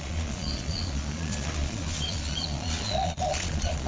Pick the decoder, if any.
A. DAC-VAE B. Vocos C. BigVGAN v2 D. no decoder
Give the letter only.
B